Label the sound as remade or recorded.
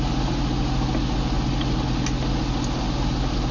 recorded